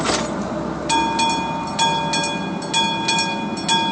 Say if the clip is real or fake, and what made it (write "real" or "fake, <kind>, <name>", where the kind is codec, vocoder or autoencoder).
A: real